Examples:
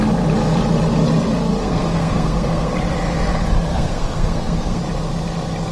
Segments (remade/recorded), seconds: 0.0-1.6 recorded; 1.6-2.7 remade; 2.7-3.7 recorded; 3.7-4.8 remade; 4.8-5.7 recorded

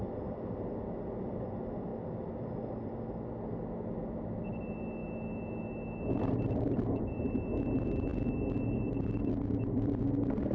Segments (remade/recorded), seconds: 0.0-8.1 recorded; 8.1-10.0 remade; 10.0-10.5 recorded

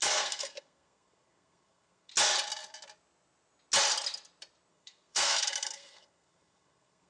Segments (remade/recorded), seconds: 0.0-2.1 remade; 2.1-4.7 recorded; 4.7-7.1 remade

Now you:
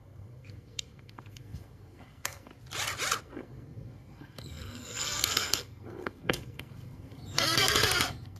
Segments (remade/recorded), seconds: 0.0-2.5 remade; 2.5-3.2 recorded; 3.2-8.4 remade

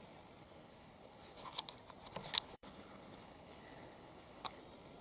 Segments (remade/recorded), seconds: 0.0-0.4 recorded; 0.4-1.7 remade; 1.7-2.2 recorded; 2.2-4.6 remade; 4.6-5.0 recorded

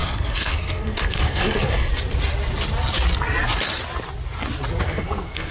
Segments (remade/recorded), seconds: 0.0-1.9 remade; 1.9-4.8 recorded; 4.8-5.5 remade

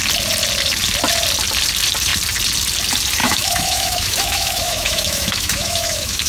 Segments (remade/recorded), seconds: 0.0-3.2 recorded; 3.2-6.3 remade